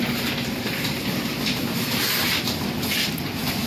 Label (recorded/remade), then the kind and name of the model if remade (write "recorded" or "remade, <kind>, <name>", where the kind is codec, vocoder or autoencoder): recorded